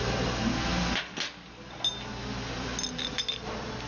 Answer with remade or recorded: recorded